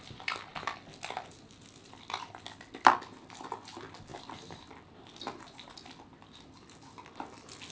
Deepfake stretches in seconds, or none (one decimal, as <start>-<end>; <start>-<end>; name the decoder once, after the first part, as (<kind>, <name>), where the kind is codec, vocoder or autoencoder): none

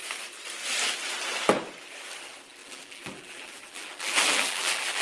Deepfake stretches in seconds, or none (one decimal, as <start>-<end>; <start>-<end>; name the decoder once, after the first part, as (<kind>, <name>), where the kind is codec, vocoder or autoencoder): 2.6-5.0 (vocoder, BigVGAN v2)

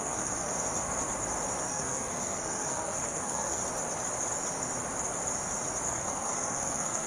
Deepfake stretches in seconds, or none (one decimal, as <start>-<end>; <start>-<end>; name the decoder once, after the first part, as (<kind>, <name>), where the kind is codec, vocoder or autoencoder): 0.0-0.5 (codec, SNAC); 1.7-3.6; 5.9-7.1